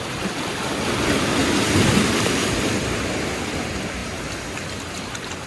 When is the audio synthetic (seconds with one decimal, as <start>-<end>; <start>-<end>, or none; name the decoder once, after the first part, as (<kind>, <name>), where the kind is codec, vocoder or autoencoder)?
0.0-1.4 (vocoder, BigVGAN v2); 2.0-5.5